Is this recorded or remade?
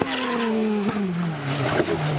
recorded